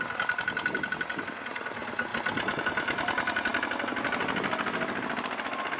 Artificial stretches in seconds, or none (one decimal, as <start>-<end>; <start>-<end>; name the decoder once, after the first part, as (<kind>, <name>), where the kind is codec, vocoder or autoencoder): none